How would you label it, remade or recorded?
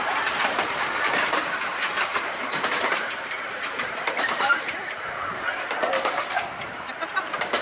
remade